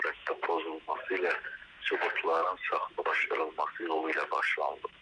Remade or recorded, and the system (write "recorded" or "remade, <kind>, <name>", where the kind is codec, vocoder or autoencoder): remade, autoencoder, DAC-VAE